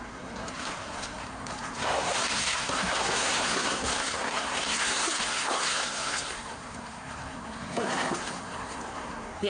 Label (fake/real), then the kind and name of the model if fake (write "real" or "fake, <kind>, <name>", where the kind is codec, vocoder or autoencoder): fake, codec, SNAC